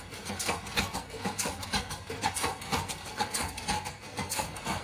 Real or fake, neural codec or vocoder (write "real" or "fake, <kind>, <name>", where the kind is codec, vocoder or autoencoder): fake, codec, SNAC